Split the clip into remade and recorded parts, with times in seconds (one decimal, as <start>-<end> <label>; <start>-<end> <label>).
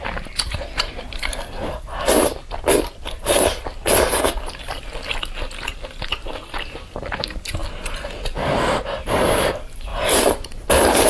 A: 0.0-1.6 remade; 1.6-6.4 recorded; 6.4-7.6 remade; 7.6-9.5 recorded; 9.5-11.1 remade